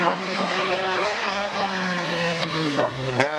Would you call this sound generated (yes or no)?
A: yes